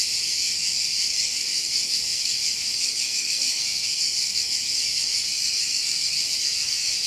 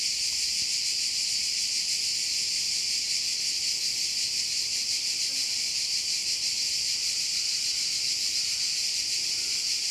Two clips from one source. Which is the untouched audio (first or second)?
second